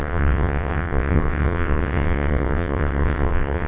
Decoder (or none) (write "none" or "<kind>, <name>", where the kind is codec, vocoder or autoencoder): vocoder, WaveNeXt